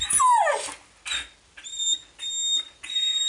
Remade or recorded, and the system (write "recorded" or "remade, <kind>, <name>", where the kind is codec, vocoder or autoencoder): recorded